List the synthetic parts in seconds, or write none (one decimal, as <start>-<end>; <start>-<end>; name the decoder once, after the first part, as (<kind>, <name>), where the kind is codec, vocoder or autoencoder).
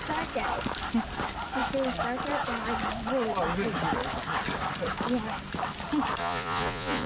6.2-7.1 (vocoder, Vocos)